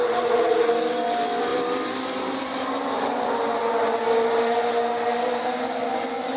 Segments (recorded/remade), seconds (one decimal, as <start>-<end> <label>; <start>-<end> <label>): 0.0-0.7 remade; 0.7-6.4 recorded